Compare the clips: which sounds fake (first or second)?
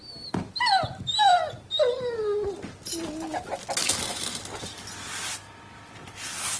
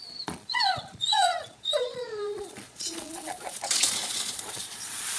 second